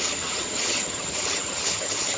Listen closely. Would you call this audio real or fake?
fake